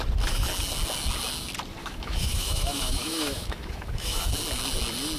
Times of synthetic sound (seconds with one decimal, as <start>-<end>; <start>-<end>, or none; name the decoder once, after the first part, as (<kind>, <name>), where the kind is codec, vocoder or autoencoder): 1.8-4.2 (autoencoder, DAC-VAE)